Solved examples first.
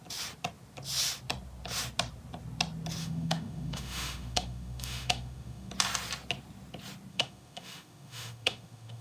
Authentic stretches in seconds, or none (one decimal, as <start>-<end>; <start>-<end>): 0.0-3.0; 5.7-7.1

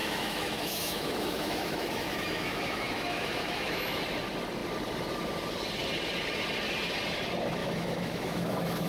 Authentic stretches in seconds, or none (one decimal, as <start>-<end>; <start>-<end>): 4.0-7.6

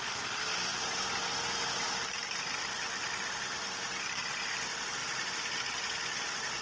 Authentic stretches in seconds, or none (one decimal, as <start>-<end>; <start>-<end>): 0.0-6.6

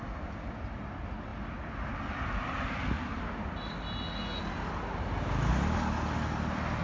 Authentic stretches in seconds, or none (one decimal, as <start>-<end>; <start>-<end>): 0.0-6.8